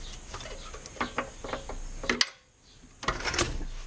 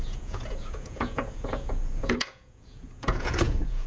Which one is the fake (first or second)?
second